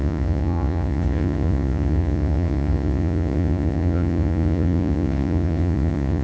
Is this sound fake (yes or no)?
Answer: yes